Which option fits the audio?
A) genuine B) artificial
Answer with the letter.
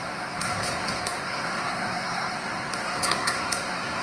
B